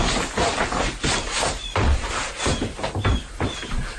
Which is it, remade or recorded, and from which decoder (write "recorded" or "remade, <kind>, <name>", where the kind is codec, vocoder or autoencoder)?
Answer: recorded